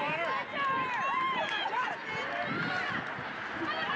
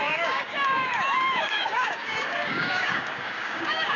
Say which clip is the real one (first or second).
first